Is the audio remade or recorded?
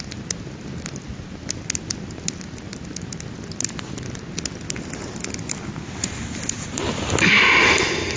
recorded